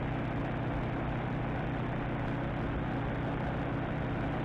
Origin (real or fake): real